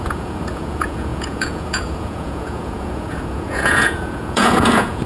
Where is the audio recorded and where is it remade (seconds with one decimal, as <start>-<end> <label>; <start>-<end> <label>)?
0.0-5.1 remade

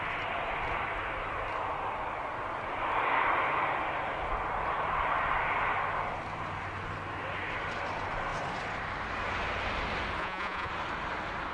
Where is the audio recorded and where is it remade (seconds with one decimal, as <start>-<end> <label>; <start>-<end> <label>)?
0.0-10.2 recorded; 10.2-10.7 remade; 10.7-11.5 recorded

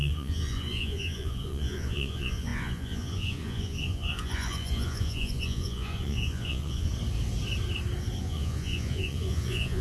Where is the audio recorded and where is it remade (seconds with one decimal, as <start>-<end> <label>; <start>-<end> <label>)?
0.0-6.9 remade; 6.9-8.2 recorded; 8.2-9.8 remade